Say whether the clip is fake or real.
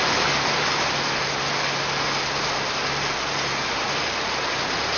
real